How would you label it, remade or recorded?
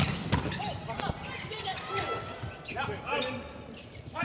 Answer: recorded